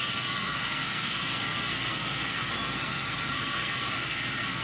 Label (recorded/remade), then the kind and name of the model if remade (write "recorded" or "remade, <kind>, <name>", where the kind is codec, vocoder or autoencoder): remade, codec, SNAC